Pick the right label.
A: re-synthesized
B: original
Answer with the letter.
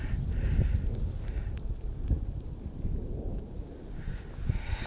B